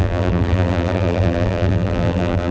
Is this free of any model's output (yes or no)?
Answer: no